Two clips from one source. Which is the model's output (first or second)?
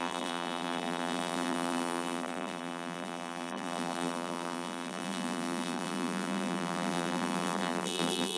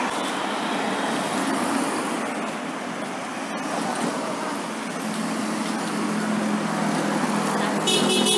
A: first